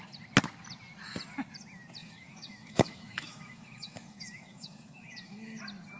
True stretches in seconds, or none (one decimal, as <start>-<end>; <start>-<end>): 0.0-2.0; 5.6-6.0